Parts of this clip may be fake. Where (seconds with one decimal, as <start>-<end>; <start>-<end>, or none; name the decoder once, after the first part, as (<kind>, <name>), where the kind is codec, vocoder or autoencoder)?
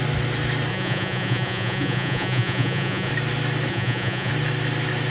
0.7-3.1 (vocoder, Vocos); 3.7-4.3